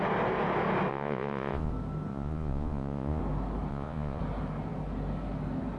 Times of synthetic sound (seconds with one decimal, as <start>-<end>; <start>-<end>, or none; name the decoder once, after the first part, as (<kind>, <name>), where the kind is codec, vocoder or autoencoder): 0.9-1.7 (vocoder, Vocos); 2.1-3.2; 3.7-4.2